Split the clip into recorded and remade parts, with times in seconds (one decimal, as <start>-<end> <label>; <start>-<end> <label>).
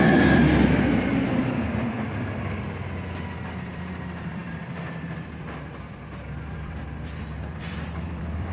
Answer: 0.0-1.1 remade; 1.1-3.7 recorded; 3.7-8.5 remade